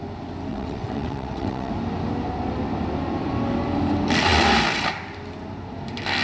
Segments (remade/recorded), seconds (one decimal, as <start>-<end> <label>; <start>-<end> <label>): 0.0-0.5 recorded; 0.5-1.7 remade; 1.7-6.2 recorded